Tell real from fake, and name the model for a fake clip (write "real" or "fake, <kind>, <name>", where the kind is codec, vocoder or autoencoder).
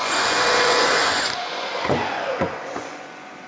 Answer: fake, vocoder, Vocos